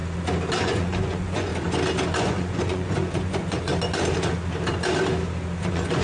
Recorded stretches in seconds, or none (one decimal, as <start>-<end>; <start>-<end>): 0.0-0.6; 1.5-2.2; 3.7-5.6